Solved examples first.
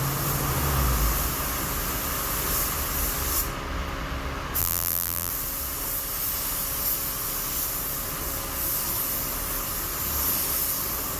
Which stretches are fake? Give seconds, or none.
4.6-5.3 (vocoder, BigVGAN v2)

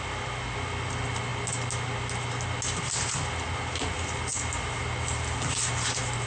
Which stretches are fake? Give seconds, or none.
none